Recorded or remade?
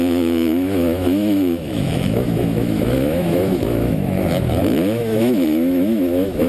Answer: remade